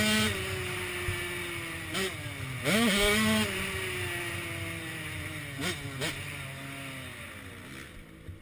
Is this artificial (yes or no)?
no